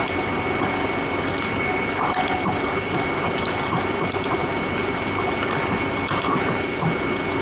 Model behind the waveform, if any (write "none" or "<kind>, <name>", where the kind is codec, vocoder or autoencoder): none